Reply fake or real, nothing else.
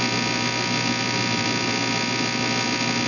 real